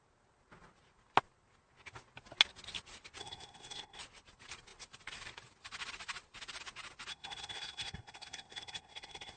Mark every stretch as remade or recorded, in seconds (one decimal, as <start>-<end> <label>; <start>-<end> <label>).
0.0-3.2 recorded; 3.2-4.0 remade; 4.0-7.1 recorded; 7.1-9.4 remade